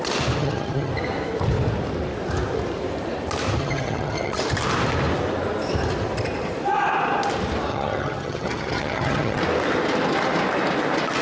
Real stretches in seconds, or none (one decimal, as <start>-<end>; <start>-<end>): 0.0-0.4; 0.9-3.6; 4.4-7.7; 9.4-11.2